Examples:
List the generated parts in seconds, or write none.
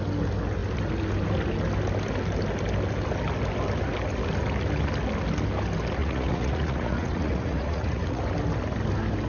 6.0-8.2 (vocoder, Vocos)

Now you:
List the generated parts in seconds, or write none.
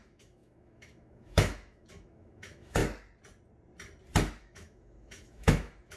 0.0-2.8 (autoencoder, DAC-VAE); 4.4-6.0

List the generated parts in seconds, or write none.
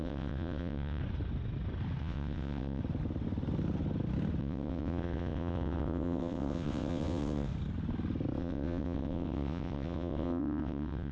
0.0-1.0 (vocoder, WaveNeXt); 2.0-2.8; 4.4-7.5; 8.4-11.1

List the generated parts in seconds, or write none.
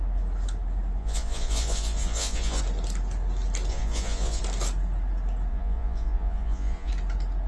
1.0-2.6 (vocoder, Vocos); 3.7-4.4; 5.5-6.9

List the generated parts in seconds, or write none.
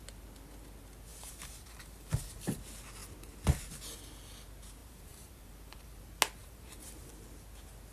1.1-2.2 (vocoder, BigVGAN v2); 4.8-6.0; 6.4-7.1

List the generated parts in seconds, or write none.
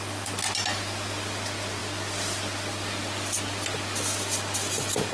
none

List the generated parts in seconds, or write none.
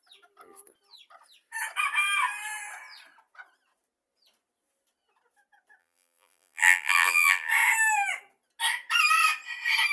5.8-7.5 (vocoder, BigVGAN v2)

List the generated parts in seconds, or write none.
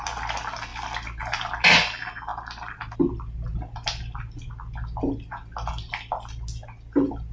none